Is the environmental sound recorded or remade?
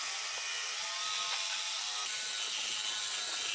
recorded